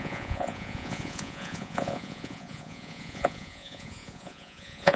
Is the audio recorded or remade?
remade